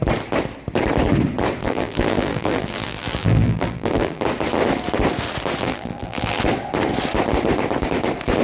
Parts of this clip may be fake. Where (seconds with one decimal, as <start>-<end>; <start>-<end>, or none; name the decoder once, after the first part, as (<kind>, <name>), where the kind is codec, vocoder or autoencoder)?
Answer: 1.6-4.2 (vocoder, BigVGAN v2); 5.6-6.4